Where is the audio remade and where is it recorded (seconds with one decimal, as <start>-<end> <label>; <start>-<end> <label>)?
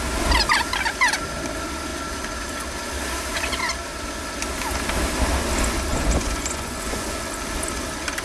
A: 0.0-5.9 recorded; 5.9-7.4 remade; 7.4-8.2 recorded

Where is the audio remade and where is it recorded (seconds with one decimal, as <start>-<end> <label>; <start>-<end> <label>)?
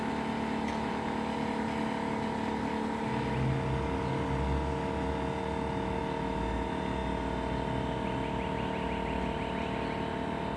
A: 0.0-10.6 recorded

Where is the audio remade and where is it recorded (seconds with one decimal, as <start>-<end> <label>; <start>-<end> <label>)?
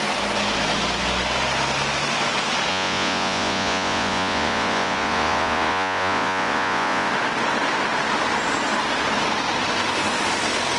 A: 0.0-2.7 recorded; 2.7-7.1 remade; 7.1-10.8 recorded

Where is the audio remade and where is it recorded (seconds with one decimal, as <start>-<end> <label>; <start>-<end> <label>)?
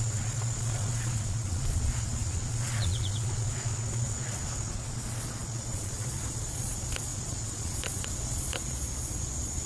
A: 0.0-9.7 remade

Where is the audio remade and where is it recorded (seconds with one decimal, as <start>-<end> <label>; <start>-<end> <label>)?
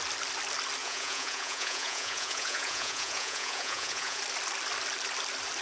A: 0.0-0.8 recorded; 0.8-4.2 remade; 4.2-5.6 recorded